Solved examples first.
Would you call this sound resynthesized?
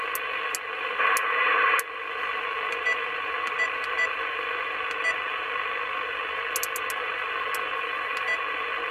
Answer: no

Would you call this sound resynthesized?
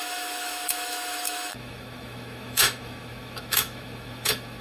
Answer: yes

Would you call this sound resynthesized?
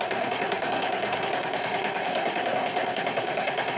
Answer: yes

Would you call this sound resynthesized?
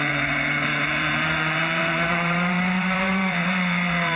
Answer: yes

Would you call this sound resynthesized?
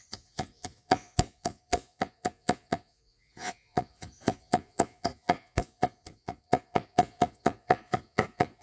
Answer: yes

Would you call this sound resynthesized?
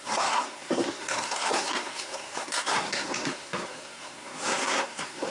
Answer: yes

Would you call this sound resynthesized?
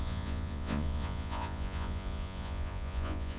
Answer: yes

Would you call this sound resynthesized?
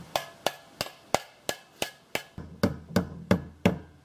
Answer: no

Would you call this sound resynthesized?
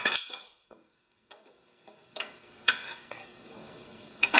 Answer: yes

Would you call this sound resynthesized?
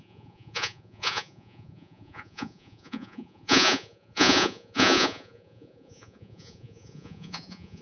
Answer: yes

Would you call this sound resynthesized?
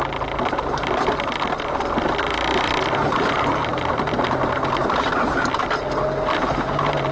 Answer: no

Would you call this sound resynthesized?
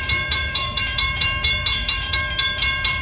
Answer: yes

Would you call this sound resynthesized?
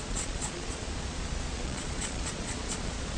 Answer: yes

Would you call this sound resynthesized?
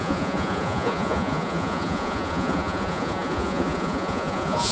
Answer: yes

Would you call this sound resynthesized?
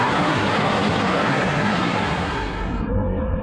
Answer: yes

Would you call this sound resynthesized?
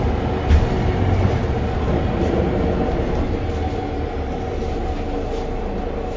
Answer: no